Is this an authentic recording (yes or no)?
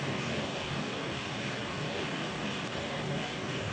no